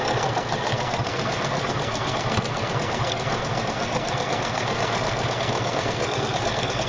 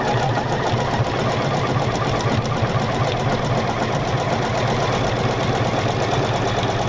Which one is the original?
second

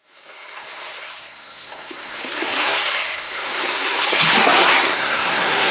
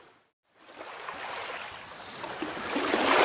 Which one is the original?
second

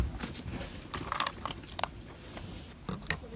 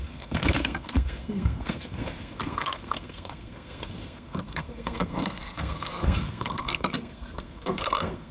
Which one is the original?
first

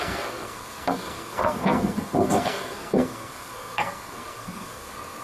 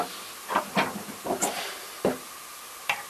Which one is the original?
second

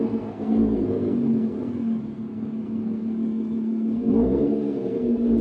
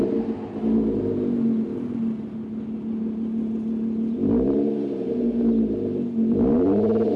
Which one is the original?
second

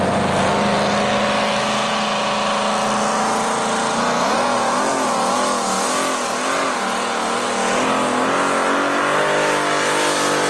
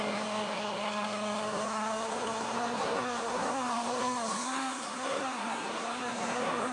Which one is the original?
first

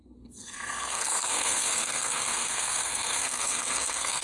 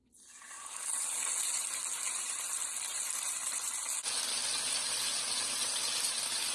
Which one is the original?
second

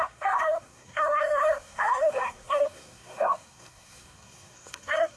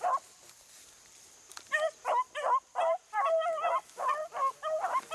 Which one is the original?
second